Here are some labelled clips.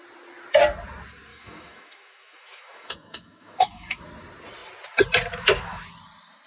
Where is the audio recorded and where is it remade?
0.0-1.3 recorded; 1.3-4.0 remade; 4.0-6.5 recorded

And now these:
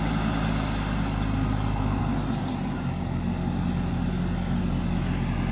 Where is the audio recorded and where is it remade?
0.0-5.5 recorded

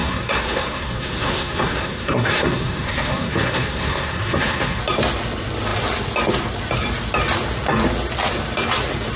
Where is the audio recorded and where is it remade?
0.0-4.8 remade; 4.8-9.2 recorded

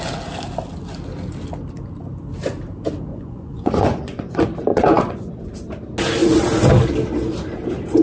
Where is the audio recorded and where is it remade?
0.0-3.1 recorded; 3.1-4.3 remade; 4.3-4.7 recorded; 4.7-5.3 remade; 5.3-8.0 recorded

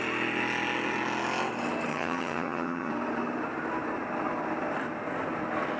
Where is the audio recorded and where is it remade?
0.0-1.9 recorded; 1.9-2.9 remade; 2.9-5.8 recorded

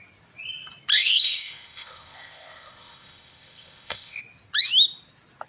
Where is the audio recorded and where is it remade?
0.0-0.9 recorded; 0.9-4.2 remade; 4.2-5.5 recorded

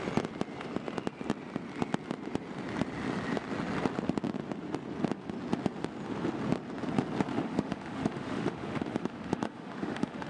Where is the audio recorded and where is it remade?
0.0-7.3 recorded; 7.3-10.3 remade